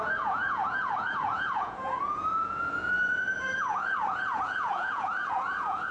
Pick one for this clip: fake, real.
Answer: fake